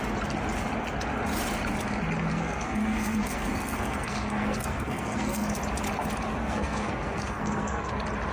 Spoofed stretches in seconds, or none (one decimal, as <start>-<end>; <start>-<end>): 2.3-5.5; 6.4-7.9